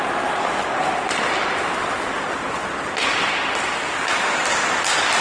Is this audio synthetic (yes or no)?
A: yes